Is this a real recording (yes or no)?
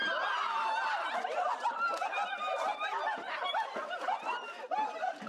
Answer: yes